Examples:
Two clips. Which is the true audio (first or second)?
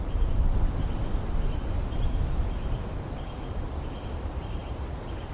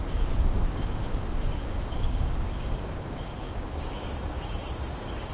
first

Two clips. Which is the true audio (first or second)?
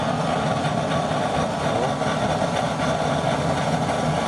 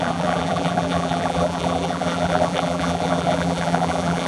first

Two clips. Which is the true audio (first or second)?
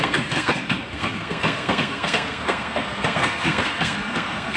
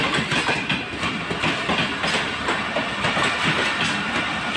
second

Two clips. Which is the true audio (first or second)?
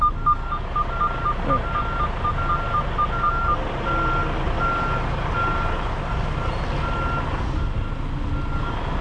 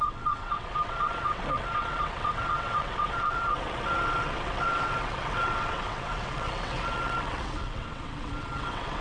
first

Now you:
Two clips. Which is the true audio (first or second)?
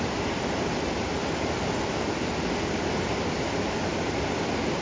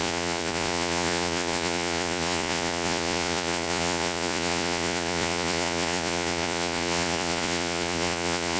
first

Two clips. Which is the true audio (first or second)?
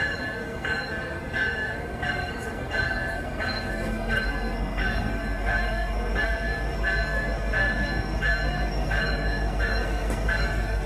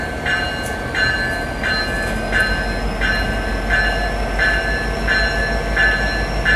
second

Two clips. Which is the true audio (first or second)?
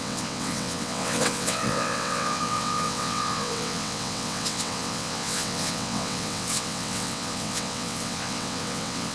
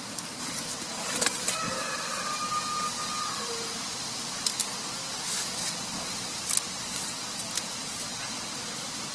second